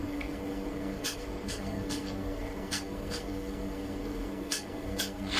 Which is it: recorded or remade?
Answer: remade